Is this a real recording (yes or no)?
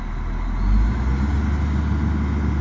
yes